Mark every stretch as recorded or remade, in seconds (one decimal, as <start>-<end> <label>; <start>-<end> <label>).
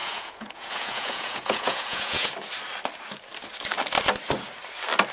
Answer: 0.0-2.3 remade; 2.3-5.1 recorded